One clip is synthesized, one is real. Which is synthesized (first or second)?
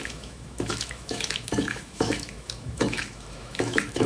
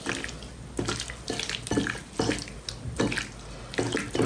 first